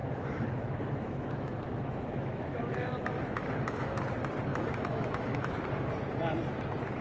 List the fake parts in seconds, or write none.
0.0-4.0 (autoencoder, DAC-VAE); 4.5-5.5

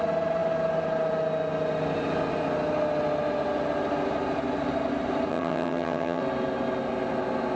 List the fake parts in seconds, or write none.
5.3-6.2 (vocoder, HiFi-GAN)

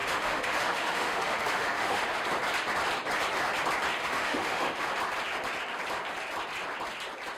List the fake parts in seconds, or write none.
0.0-2.0 (autoencoder, DAC-VAE); 4.0-4.9

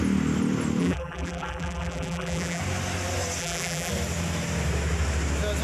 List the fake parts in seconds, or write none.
0.8-2.6 (vocoder, BigVGAN v2); 3.4-3.9